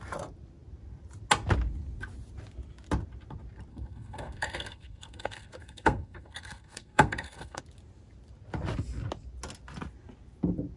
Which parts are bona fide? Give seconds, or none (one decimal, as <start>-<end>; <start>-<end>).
0.0-3.7; 7.6-10.8